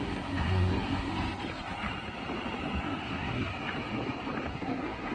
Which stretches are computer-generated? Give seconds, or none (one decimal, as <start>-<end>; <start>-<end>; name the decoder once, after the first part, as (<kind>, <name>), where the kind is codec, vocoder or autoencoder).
0.0-1.1 (codec, SNAC); 2.8-3.5; 4.5-5.1